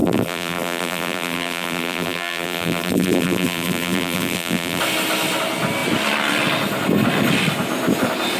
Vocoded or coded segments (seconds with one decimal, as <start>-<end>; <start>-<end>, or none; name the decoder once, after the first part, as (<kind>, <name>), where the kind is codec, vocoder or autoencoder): 0.0-4.8 (vocoder, BigVGAN v2)